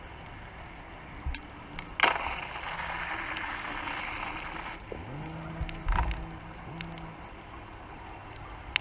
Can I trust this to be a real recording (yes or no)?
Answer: yes